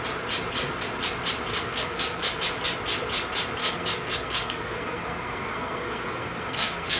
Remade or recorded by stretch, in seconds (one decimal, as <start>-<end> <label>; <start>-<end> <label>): 0.0-1.5 recorded; 1.5-2.4 remade; 2.4-3.6 recorded; 3.6-7.0 remade